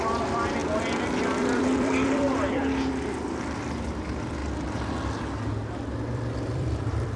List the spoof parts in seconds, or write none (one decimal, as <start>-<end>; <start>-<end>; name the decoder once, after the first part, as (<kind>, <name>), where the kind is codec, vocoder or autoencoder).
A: 0.0-4.4 (vocoder, BigVGAN v2); 6.1-7.2